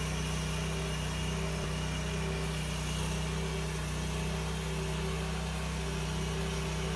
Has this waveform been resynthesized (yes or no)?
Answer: no